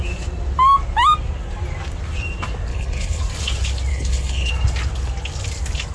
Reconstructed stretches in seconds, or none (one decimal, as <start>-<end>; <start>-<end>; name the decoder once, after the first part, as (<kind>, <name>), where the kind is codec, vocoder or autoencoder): 2.7-3.2 (codec, HILCodec); 3.9-4.5